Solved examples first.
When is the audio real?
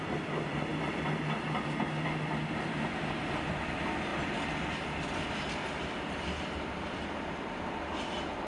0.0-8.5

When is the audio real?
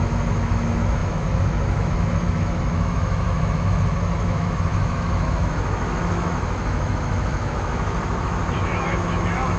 none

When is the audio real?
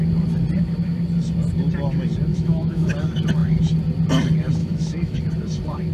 0.0-2.3; 2.9-4.6; 5.2-5.9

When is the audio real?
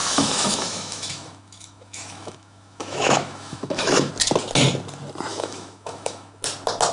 4.1-5.3; 6.4-6.9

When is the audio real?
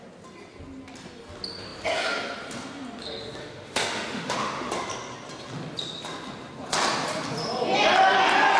0.0-3.4; 4.7-8.6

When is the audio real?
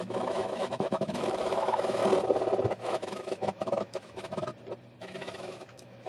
2.0-2.7; 4.5-5.0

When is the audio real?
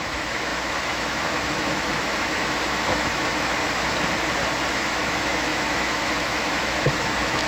3.6-4.7